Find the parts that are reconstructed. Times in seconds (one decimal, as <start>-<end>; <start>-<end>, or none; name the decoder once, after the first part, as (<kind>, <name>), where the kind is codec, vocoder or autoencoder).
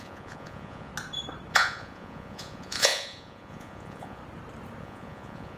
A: 0.0-0.9 (vocoder, Vocos); 1.5-4.2; 4.8-5.6